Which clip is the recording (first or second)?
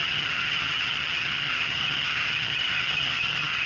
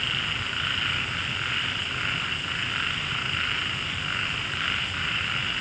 second